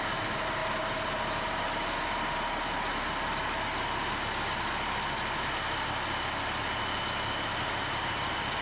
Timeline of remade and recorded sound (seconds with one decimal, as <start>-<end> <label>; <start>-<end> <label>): 0.0-8.6 recorded